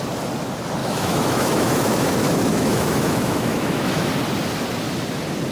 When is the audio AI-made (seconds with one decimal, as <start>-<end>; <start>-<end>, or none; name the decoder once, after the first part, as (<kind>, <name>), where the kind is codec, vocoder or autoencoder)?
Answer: 0.8-4.1 (autoencoder, DAC-VAE)